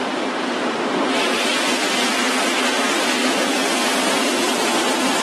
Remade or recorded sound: remade